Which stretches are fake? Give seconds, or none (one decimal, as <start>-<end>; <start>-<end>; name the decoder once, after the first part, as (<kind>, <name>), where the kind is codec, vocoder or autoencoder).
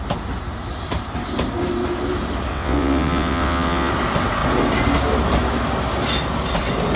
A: 2.5-3.9 (vocoder, WaveNeXt)